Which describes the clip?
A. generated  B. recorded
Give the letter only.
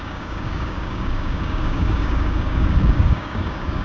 A